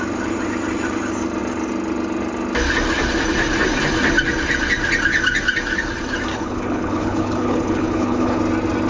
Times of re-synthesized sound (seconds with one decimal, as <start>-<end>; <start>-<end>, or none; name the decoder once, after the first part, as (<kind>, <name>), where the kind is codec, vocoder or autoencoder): 6.3-8.4 (codec, HILCodec)